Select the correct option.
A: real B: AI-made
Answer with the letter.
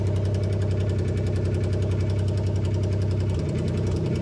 B